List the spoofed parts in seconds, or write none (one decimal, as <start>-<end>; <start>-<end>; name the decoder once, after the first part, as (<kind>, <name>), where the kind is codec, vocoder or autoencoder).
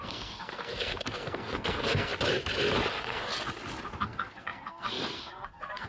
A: 0.0-2.1 (codec, SNAC); 2.9-3.3; 4.0-5.9